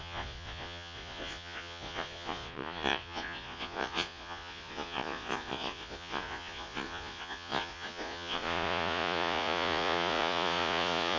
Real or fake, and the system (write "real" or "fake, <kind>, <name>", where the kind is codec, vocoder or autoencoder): fake, vocoder, Vocos